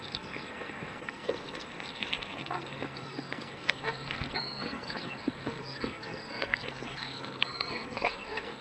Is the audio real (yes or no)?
no